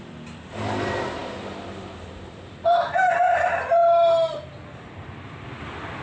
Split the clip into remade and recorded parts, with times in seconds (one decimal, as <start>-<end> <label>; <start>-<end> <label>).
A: 0.0-6.0 recorded

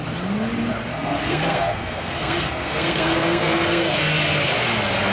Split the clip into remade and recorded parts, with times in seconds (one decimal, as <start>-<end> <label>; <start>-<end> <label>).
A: 0.0-0.9 recorded; 0.9-4.0 remade; 4.0-5.1 recorded

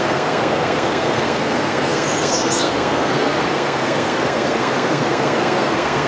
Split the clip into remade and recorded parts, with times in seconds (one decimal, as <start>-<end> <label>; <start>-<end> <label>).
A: 0.0-6.1 remade

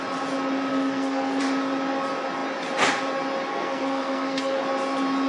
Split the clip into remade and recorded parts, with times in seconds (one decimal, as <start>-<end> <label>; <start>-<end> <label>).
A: 0.0-0.7 recorded; 0.7-1.4 remade; 1.4-3.5 recorded; 3.5-4.6 remade; 4.6-5.3 recorded